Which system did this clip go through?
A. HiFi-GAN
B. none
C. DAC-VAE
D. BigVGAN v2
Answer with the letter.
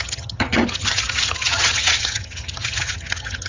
A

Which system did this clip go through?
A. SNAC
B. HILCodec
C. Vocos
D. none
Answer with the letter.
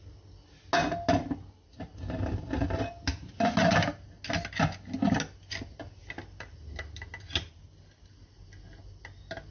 D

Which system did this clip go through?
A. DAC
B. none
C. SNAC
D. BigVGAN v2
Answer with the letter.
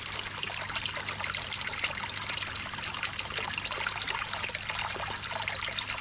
B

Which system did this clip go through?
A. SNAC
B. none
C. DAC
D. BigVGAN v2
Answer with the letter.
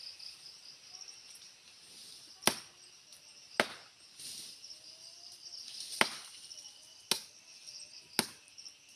B